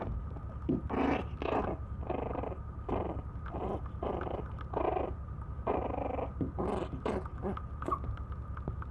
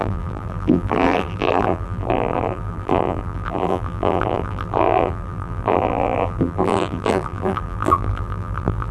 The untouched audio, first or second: first